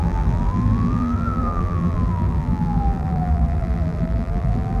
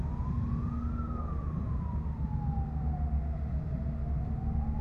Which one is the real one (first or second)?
second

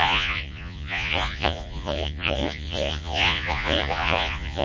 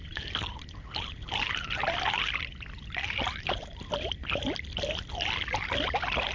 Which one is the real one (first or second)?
second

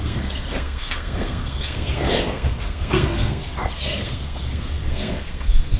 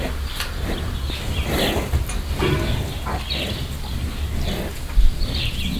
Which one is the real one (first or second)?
second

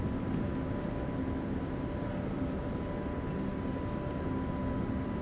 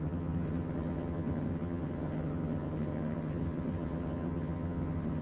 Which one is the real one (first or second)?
first